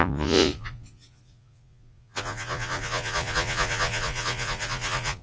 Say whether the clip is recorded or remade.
remade